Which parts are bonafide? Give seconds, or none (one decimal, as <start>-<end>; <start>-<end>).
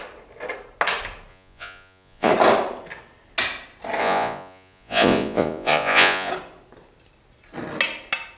0.0-1.3; 2.3-4.0; 6.3-8.4